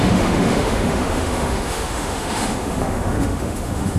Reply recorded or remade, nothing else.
remade